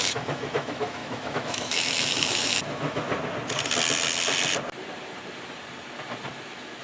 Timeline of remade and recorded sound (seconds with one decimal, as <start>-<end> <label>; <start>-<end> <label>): 0.0-3.1 remade; 3.1-6.8 recorded